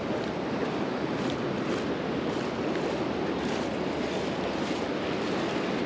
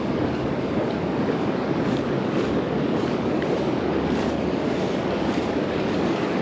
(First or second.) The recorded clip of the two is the first